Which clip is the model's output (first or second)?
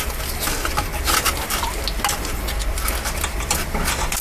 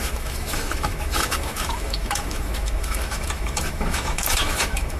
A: second